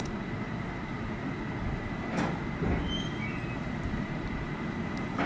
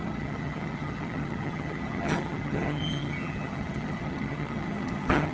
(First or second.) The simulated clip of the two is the second